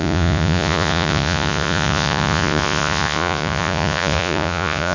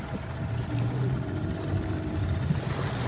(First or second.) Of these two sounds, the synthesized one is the first